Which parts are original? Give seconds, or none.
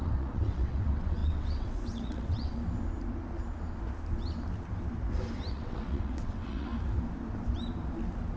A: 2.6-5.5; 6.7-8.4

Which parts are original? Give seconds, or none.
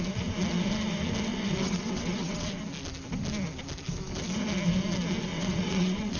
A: 0.0-1.3; 2.6-5.3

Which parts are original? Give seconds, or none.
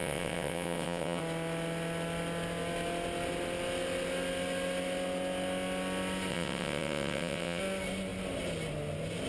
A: 1.2-6.3; 7.6-9.3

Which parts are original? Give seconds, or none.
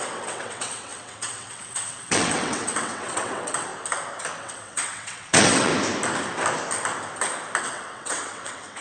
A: 3.7-4.4; 5.7-7.6